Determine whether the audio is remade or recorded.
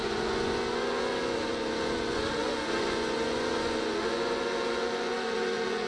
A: remade